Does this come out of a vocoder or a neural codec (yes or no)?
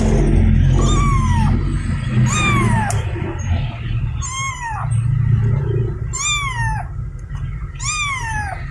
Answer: no